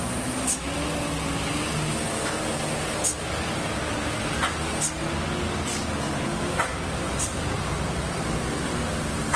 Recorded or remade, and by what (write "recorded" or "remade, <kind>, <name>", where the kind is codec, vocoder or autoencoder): recorded